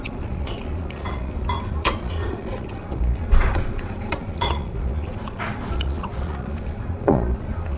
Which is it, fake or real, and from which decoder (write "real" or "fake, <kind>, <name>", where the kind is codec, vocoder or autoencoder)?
fake, vocoder, Vocos